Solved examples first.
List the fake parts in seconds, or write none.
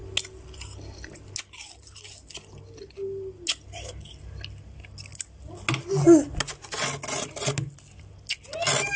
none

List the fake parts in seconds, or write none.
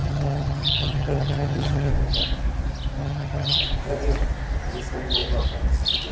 0.0-1.9 (vocoder, HiFi-GAN); 3.0-3.6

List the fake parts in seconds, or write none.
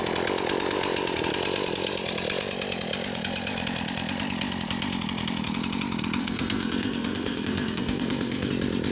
6.2-8.5 (codec, SNAC)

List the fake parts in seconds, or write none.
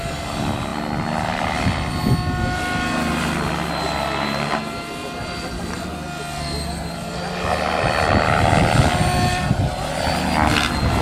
none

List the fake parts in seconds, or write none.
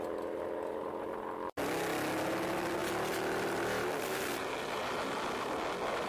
none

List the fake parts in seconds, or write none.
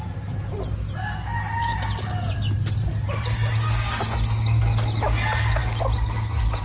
none